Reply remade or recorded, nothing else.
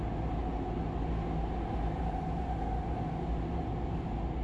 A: recorded